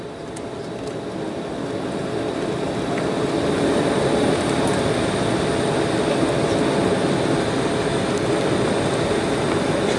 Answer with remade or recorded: recorded